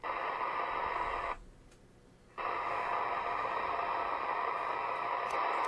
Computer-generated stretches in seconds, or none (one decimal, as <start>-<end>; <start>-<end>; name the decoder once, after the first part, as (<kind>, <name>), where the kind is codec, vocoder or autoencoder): none